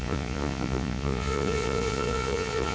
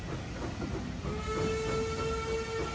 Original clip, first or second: second